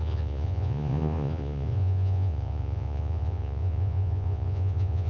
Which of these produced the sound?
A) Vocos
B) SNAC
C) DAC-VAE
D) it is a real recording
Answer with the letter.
A